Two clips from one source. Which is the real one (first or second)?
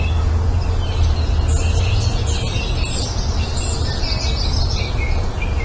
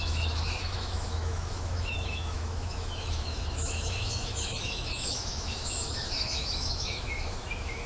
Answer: first